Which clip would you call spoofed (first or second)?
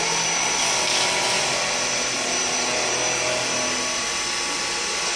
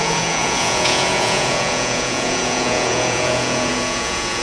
second